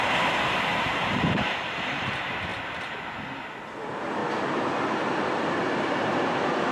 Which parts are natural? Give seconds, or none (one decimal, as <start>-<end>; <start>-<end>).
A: 2.5-3.8; 4.2-5.8